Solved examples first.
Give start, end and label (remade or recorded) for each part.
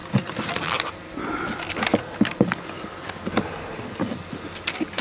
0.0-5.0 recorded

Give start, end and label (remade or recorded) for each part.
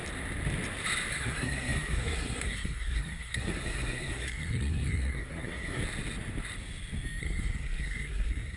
0.0-1.1 recorded; 1.1-5.8 remade; 5.8-7.2 recorded; 7.2-8.6 remade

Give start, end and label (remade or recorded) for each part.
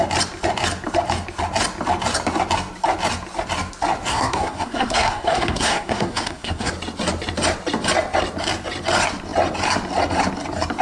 0.0-4.1 recorded; 4.1-6.7 remade; 6.7-10.8 recorded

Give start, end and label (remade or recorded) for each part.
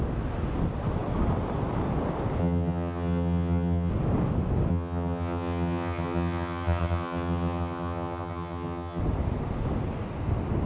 0.0-2.4 recorded; 2.4-3.9 remade; 3.9-4.7 recorded; 4.7-9.0 remade; 9.0-10.7 recorded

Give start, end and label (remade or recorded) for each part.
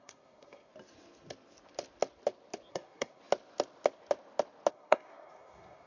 0.0-0.7 remade; 0.7-2.7 recorded; 2.7-3.2 remade; 3.2-4.7 recorded; 4.7-5.9 remade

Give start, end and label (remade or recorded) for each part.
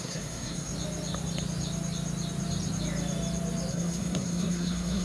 0.0-0.7 remade; 0.7-3.7 recorded; 3.7-5.0 remade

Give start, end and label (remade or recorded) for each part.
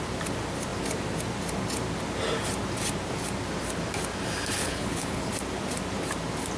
0.0-4.6 recorded; 4.6-5.3 remade; 5.3-6.6 recorded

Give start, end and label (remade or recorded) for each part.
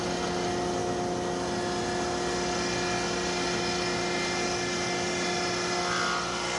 0.0-6.6 recorded